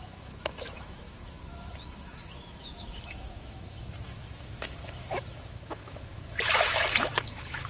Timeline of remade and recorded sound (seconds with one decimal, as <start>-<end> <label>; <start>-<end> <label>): 0.0-7.7 remade